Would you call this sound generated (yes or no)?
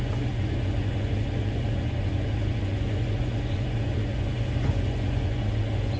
yes